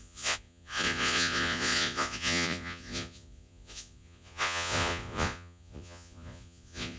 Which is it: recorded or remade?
remade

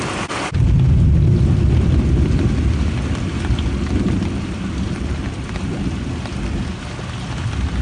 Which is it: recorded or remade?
recorded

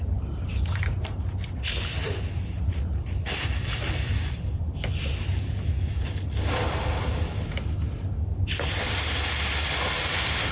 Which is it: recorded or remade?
recorded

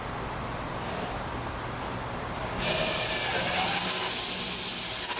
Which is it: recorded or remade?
recorded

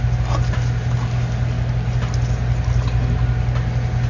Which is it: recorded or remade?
recorded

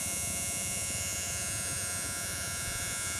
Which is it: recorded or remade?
remade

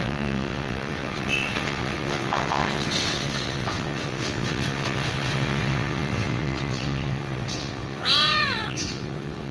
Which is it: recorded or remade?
remade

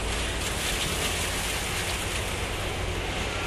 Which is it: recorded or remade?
recorded